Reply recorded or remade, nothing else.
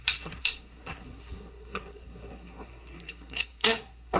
remade